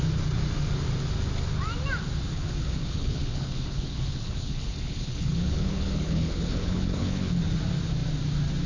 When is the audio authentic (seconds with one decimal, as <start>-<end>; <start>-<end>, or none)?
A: 0.0-2.3; 7.4-8.7